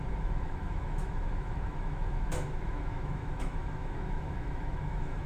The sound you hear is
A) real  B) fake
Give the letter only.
B